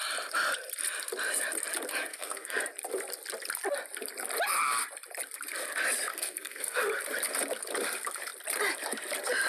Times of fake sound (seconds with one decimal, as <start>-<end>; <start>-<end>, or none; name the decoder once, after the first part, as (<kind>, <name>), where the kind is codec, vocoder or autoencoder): 2.1-2.6 (codec, SNAC); 6.1-6.8